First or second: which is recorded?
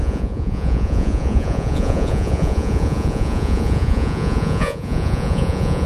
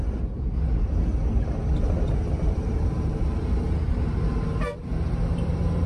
second